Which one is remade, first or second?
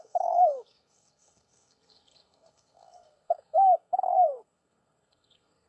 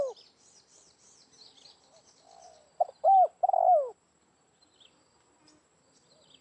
first